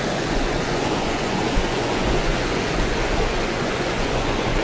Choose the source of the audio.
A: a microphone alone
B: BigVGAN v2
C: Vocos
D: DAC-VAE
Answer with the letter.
C